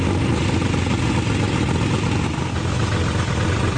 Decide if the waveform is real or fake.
real